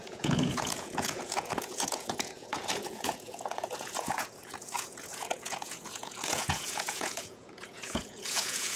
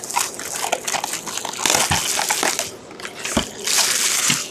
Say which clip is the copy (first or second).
first